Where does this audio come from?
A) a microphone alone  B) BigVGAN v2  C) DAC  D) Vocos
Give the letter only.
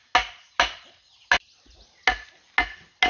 A